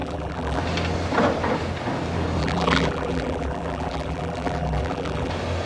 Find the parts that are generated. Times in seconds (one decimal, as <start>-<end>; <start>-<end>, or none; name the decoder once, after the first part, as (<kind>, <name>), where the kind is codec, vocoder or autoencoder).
0.0-0.6 (vocoder, BigVGAN v2); 2.4-5.3